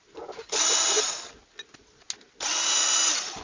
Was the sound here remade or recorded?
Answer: recorded